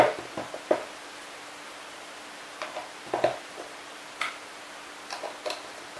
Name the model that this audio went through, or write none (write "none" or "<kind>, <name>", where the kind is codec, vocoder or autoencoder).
none